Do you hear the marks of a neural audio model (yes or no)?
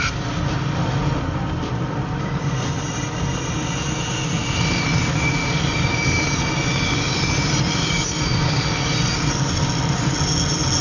no